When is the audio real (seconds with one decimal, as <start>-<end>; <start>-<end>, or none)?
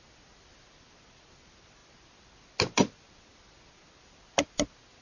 0.0-5.0